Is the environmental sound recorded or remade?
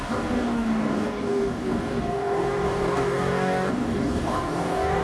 remade